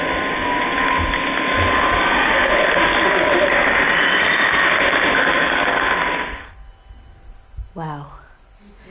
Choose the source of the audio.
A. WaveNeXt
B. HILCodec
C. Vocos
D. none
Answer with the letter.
D